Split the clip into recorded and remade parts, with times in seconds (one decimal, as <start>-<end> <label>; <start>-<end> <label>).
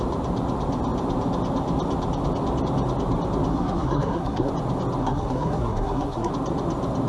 0.0-3.5 recorded; 3.5-4.5 remade; 4.5-5.0 recorded; 5.0-6.3 remade; 6.3-7.1 recorded